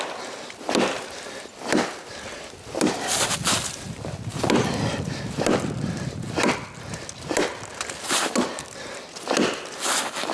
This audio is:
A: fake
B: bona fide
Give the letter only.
B